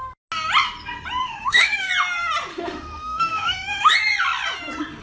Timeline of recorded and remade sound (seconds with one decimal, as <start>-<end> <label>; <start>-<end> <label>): 0.0-1.2 recorded; 1.2-1.9 remade; 1.9-2.5 recorded; 2.5-3.9 remade; 3.9-5.0 recorded